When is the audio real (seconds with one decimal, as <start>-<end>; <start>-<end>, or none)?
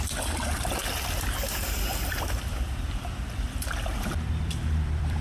none